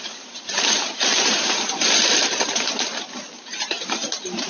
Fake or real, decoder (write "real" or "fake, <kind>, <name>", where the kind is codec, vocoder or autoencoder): fake, vocoder, BigVGAN v2